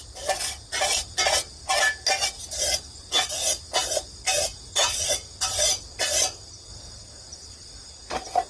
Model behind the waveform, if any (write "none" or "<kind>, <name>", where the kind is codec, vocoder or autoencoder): none